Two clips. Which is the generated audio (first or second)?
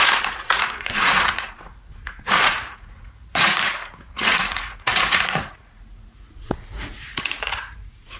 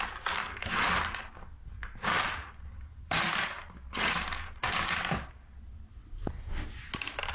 first